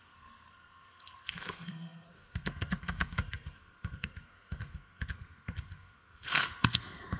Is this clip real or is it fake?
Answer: fake